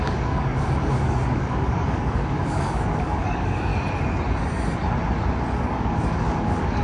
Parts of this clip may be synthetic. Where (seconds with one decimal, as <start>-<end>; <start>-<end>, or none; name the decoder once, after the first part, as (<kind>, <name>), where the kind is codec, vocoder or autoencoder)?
0.0-3.7 (codec, DAC); 5.6-6.8